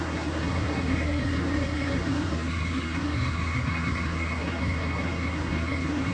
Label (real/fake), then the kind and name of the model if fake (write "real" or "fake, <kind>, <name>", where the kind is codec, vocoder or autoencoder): fake, codec, SNAC